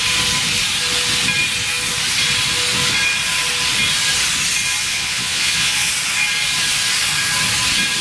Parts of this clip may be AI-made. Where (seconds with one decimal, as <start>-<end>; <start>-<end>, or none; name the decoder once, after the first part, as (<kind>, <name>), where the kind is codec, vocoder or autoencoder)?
4.8-5.9 (vocoder, Vocos)